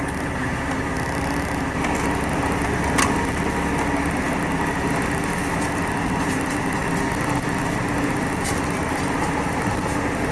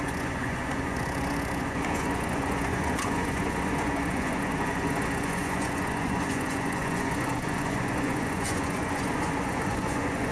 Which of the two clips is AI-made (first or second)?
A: second